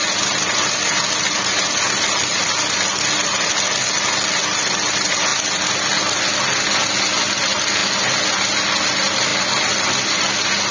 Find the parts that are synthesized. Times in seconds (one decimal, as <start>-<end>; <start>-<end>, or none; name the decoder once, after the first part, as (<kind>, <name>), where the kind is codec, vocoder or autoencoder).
9.3-9.8 (vocoder, BigVGAN v2)